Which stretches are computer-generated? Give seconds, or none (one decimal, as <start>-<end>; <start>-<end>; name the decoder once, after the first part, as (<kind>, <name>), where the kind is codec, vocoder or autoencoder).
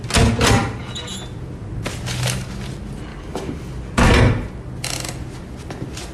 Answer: 3.1-3.7 (codec, DAC)